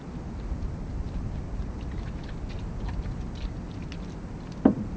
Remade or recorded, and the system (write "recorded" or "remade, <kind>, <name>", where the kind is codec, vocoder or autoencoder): recorded